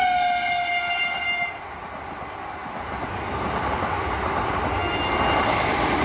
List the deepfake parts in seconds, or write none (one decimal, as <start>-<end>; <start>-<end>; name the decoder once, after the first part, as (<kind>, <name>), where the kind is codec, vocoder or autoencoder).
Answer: none